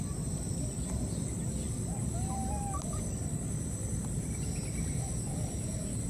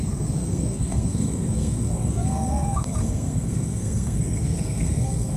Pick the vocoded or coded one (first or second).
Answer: second